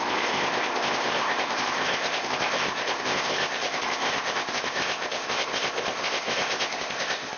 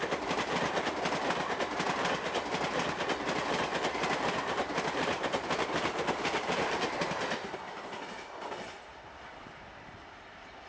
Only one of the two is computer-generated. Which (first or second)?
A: first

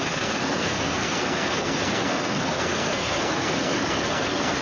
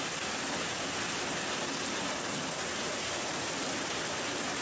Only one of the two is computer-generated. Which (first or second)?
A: first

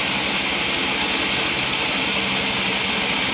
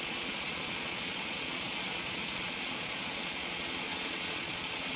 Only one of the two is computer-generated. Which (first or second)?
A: second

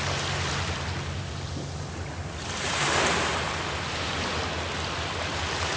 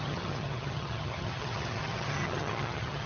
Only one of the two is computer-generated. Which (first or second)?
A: second